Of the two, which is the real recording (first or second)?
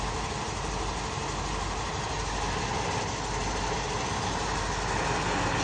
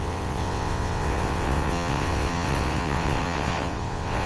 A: first